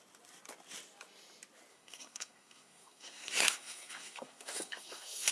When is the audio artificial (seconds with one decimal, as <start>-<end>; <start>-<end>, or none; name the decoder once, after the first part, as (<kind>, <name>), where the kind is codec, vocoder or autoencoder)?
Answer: 1.7-5.3 (codec, SNAC)